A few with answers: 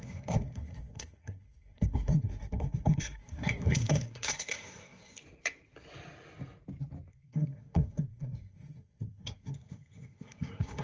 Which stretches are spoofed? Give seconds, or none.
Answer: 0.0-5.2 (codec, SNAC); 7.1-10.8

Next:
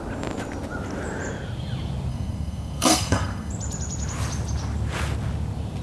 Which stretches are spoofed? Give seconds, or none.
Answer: 2.1-3.5 (codec, SNAC)

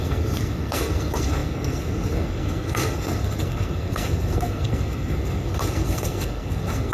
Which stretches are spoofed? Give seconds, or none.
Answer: 0.0-6.9 (codec, SNAC)

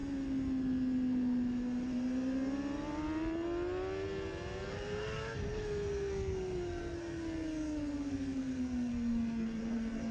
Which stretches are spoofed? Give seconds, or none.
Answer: 4.7-10.1 (codec, SNAC)

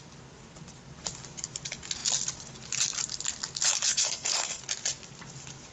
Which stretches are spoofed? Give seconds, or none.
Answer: 3.9-4.6 (codec, SNAC)

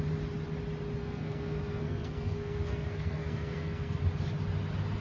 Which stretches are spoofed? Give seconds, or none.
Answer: 1.0-4.0 (codec, SNAC)

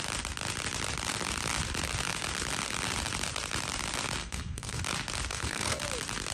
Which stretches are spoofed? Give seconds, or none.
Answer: 4.2-4.8 (codec, SNAC); 5.3-5.8